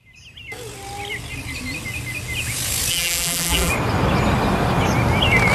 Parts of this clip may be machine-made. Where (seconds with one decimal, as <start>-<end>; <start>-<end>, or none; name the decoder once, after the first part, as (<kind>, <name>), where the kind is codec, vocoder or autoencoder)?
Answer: 2.9-3.7 (vocoder, BigVGAN v2)